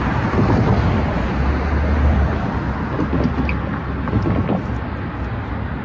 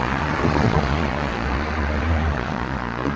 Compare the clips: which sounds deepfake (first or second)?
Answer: second